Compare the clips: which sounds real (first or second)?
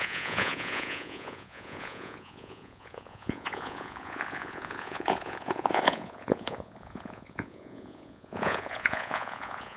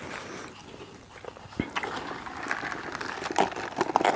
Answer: second